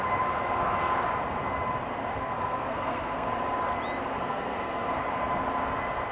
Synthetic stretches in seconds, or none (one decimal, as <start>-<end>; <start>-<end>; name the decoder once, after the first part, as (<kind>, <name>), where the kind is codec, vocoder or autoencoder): 2.1-3.3 (codec, SNAC); 4.2-5.0